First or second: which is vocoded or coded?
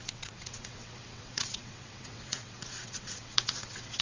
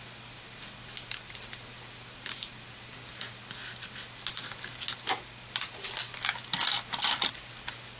first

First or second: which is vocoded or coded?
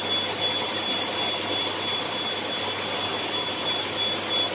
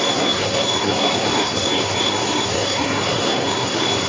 second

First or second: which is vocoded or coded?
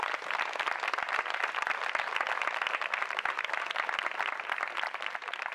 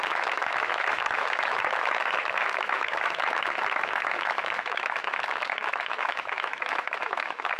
second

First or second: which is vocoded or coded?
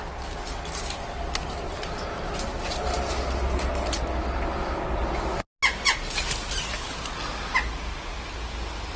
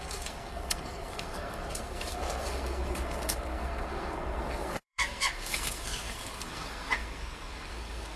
second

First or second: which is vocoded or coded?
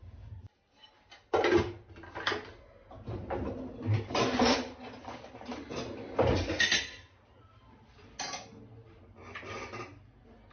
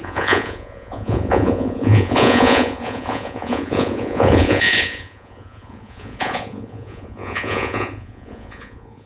second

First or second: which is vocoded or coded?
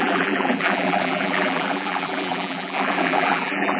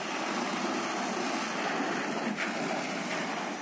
first